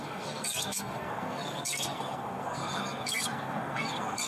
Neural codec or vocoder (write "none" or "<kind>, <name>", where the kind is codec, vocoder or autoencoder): codec, SNAC